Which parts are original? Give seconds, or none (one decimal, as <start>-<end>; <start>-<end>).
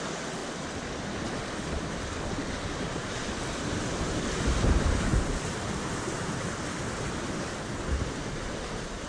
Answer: 0.0-0.4; 3.1-5.1; 7.6-9.1